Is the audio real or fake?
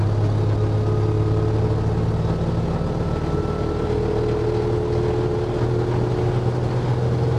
real